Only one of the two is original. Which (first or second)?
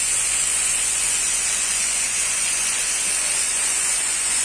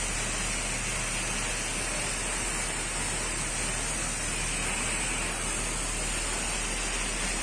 second